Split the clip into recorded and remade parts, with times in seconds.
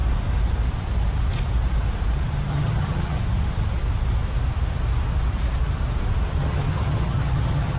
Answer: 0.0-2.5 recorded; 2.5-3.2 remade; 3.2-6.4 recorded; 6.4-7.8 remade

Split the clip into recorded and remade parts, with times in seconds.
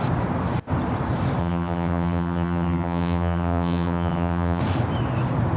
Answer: 0.0-1.4 recorded; 1.4-4.6 remade; 4.6-5.6 recorded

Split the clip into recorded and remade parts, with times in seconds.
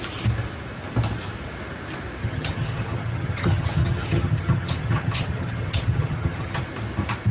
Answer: 0.0-2.2 recorded; 2.2-6.6 remade; 6.6-7.3 recorded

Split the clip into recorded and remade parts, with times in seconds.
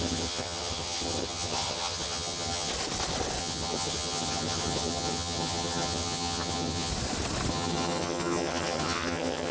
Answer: 0.0-2.7 remade; 2.7-3.4 recorded; 3.4-6.9 remade; 6.9-7.5 recorded; 7.5-9.5 remade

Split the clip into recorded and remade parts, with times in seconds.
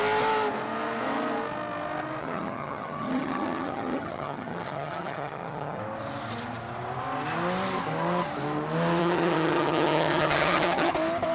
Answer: 0.0-2.2 recorded; 2.2-5.8 remade; 5.8-9.0 recorded; 9.0-10.9 remade; 10.9-11.3 recorded